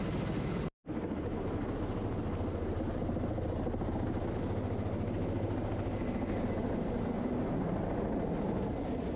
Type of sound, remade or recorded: recorded